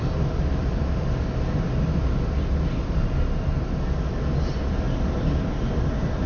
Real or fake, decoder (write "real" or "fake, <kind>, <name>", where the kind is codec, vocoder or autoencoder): real